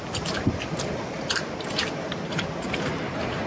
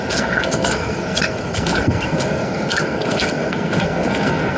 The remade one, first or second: second